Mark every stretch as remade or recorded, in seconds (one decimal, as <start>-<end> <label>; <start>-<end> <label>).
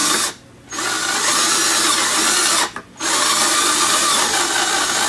0.0-5.1 recorded